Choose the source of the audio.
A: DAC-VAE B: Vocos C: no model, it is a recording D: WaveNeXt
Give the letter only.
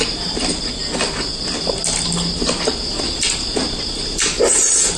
C